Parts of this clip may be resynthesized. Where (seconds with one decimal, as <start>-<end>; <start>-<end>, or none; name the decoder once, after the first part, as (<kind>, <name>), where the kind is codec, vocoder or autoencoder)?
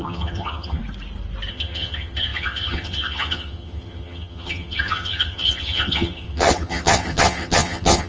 0.0-0.8 (vocoder, HiFi-GAN); 1.5-8.1